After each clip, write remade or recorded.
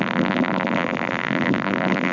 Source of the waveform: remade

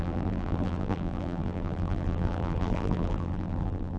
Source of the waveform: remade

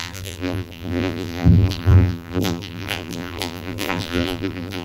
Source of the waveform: remade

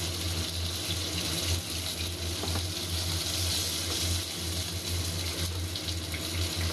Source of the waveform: recorded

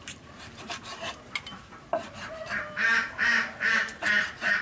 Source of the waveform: remade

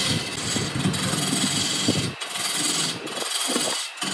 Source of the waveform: recorded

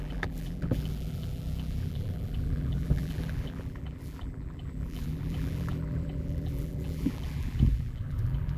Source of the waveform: remade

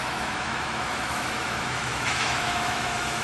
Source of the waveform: remade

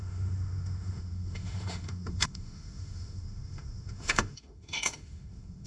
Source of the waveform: remade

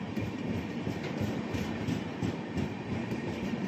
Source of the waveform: remade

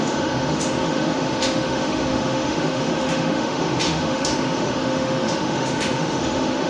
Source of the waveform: remade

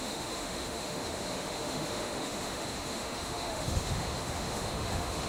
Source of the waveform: remade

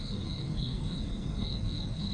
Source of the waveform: remade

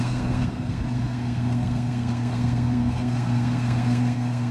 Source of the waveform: remade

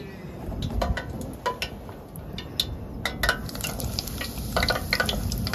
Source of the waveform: recorded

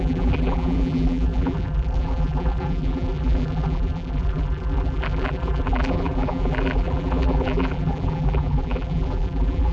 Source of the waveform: remade